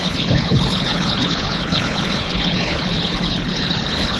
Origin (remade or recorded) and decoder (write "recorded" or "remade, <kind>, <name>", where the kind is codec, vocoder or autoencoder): remade, codec, HILCodec